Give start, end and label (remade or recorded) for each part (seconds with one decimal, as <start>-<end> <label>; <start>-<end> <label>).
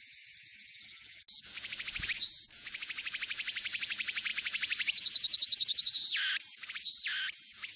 0.0-3.0 recorded; 3.0-3.8 remade; 3.8-4.3 recorded; 4.3-7.8 remade